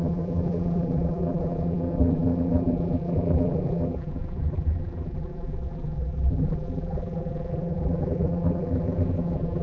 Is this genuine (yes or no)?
no